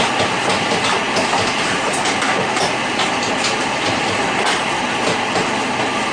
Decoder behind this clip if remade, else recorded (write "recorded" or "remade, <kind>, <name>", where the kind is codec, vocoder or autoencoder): recorded